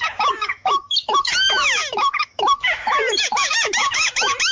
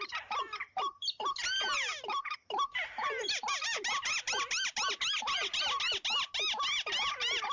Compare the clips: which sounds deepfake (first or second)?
first